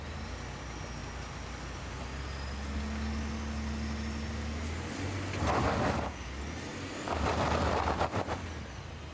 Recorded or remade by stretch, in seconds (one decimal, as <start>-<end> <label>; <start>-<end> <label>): 0.0-9.1 recorded